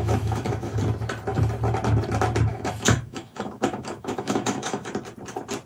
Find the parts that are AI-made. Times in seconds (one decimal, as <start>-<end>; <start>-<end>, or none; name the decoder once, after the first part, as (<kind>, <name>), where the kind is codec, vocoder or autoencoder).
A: 0.0-0.8 (autoencoder, DAC-VAE); 2.5-4.9